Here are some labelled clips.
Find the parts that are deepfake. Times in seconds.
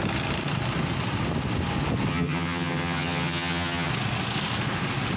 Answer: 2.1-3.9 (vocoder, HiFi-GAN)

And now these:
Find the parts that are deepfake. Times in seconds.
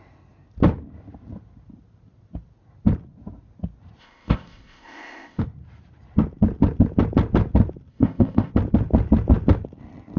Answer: 4.0-5.4 (codec, ZipCodec); 7.9-8.5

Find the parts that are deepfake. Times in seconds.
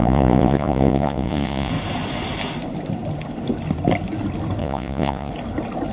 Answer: 0.0-1.7 (vocoder, Vocos); 4.6-5.3